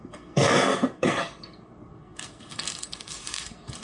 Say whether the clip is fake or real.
fake